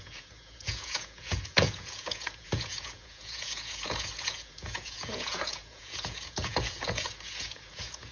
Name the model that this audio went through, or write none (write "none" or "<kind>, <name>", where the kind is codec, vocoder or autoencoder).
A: vocoder, Vocos